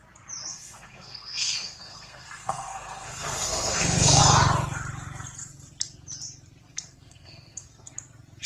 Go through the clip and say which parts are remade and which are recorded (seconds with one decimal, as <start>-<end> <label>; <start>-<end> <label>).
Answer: 0.0-0.5 recorded; 0.5-4.2 remade; 4.2-6.7 recorded; 6.7-7.9 remade; 7.9-8.5 recorded